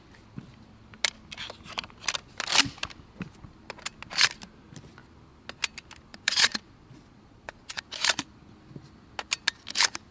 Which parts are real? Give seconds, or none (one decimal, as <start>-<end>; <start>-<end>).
0.0-6.1; 7.8-10.1